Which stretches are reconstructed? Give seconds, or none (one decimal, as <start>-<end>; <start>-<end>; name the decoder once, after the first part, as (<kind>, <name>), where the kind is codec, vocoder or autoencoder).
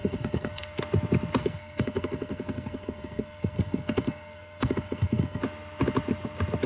0.0-0.8 (codec, SNAC); 1.4-5.4